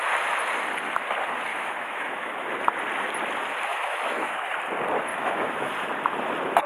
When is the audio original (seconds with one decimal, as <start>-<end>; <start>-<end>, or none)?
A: 0.0-1.5; 2.5-3.7; 4.5-5.1; 5.7-6.7